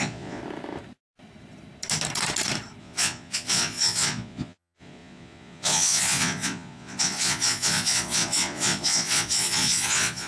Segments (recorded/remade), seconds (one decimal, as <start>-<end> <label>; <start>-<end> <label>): 0.0-0.4 remade; 0.4-2.8 recorded; 2.8-10.3 remade